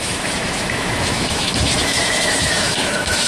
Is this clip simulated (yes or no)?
yes